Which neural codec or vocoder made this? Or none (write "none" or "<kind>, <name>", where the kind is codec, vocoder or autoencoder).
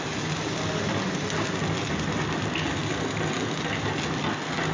none